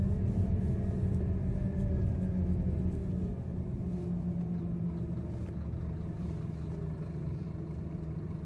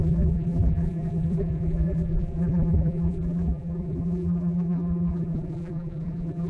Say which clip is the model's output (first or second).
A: second